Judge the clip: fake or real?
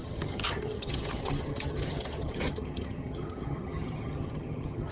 fake